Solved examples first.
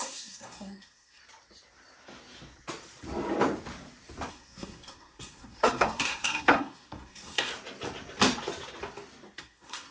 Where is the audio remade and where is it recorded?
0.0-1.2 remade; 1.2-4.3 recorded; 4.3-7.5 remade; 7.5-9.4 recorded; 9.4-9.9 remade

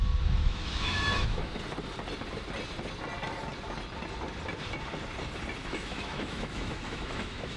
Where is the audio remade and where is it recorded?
0.0-0.4 recorded; 0.4-1.6 remade; 1.6-5.6 recorded; 5.6-7.6 remade

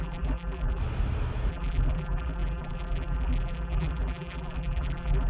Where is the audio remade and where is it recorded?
0.0-0.8 remade; 0.8-1.5 recorded; 1.5-5.3 remade

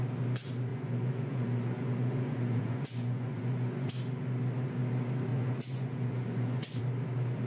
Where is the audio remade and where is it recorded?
0.0-0.7 recorded; 0.7-3.9 remade; 3.9-5.3 recorded; 5.3-6.8 remade; 6.8-7.5 recorded

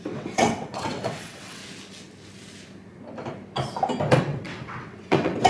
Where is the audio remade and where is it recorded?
0.0-1.6 remade; 1.6-4.1 recorded; 4.1-5.5 remade

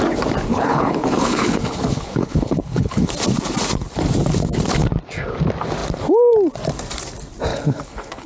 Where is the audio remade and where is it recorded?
0.0-0.5 recorded; 0.5-3.1 remade; 3.1-7.5 recorded; 7.5-8.3 remade

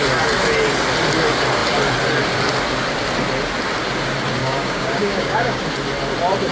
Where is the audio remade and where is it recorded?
0.0-4.4 recorded; 4.4-5.6 remade; 5.6-6.5 recorded